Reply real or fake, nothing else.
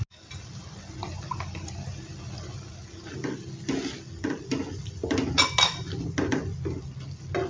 real